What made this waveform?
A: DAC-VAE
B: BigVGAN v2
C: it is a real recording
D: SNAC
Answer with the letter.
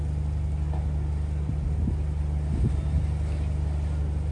C